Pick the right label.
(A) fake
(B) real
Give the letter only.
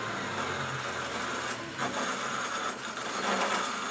B